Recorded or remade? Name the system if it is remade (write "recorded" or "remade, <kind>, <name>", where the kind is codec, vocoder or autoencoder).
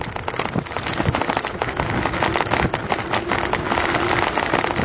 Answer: recorded